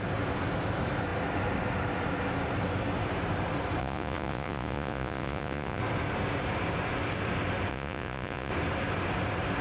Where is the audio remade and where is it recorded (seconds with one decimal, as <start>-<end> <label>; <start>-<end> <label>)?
0.0-3.8 recorded; 3.8-5.8 remade; 5.8-7.7 recorded; 7.7-8.5 remade; 8.5-9.6 recorded